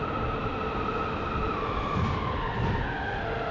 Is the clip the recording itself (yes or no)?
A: yes